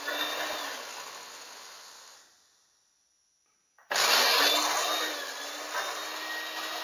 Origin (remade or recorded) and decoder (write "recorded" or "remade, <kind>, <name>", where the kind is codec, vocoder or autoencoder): recorded